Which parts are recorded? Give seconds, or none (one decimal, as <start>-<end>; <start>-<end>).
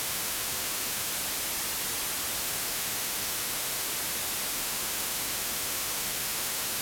1.1-2.4; 3.9-4.5